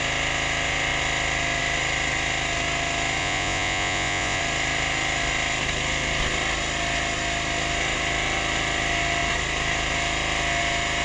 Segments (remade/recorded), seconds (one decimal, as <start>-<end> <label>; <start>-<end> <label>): 0.0-3.2 recorded; 3.2-4.4 remade; 4.4-11.0 recorded